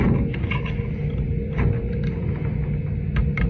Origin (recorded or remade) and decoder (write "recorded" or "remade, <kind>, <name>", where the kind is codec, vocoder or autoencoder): recorded